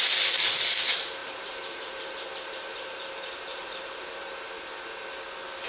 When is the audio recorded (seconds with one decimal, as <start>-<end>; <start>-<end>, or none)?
0.0-1.2; 4.3-5.7